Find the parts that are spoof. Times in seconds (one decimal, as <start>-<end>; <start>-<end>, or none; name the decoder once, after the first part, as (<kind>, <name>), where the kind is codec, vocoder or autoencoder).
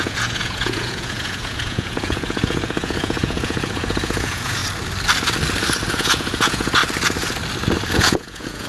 0.0-4.6 (vocoder, Vocos); 5.9-6.8; 7.9-8.7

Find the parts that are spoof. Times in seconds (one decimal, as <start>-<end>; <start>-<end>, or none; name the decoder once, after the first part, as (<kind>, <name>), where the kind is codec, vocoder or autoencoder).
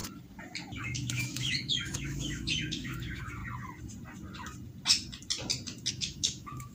0.8-3.4 (autoencoder, DAC-VAE); 5.9-6.7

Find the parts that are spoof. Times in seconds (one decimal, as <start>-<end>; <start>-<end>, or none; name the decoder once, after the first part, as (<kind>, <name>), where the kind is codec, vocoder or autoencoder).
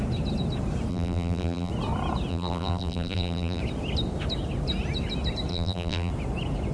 0.9-1.7 (vocoder, BigVGAN v2); 2.3-3.6; 5.5-6.1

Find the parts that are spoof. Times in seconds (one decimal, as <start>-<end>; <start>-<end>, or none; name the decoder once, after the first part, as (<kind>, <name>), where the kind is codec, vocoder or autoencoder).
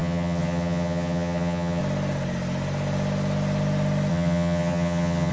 0.0-1.8 (vocoder, HiFi-GAN); 4.1-5.3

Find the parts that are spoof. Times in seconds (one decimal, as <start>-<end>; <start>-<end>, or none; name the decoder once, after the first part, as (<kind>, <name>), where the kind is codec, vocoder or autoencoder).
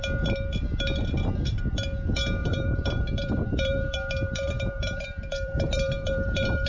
2.4-6.7 (vocoder, BigVGAN v2)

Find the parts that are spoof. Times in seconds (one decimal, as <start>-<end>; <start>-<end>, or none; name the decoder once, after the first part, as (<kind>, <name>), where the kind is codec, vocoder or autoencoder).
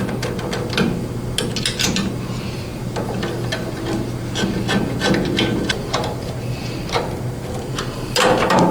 none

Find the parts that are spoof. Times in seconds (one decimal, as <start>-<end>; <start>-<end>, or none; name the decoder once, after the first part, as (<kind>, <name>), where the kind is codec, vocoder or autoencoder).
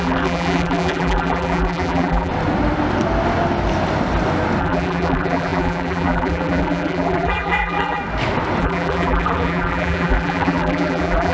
0.0-2.3 (vocoder, BigVGAN v2); 4.6-8.0; 8.6-11.3